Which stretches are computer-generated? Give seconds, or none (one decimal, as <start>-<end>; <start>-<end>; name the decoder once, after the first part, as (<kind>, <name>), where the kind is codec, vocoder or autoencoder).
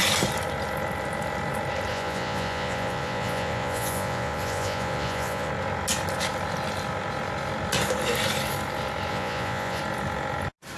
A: 1.9-5.5 (vocoder, Vocos); 9.1-9.8